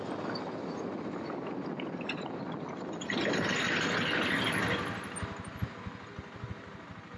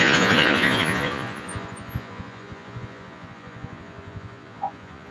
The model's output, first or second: second